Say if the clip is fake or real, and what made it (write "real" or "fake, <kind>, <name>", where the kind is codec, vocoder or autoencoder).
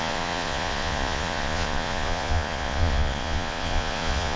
fake, vocoder, Vocos